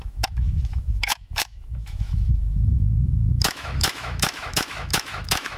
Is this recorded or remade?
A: remade